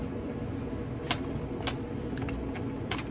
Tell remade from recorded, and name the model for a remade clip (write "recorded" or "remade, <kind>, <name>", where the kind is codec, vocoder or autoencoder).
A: recorded